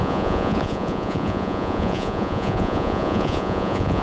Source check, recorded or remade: remade